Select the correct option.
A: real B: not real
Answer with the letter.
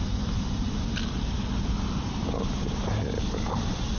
A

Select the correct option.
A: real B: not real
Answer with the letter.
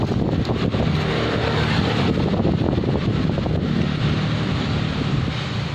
A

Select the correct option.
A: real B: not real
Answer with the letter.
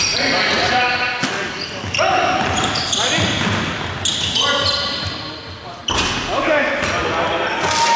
A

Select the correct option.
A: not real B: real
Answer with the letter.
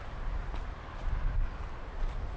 B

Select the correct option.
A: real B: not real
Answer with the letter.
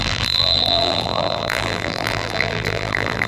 B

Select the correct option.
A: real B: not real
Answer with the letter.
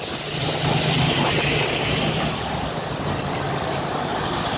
A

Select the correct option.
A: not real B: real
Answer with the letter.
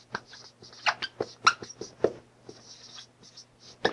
B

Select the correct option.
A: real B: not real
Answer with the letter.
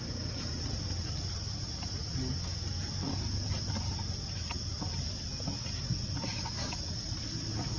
A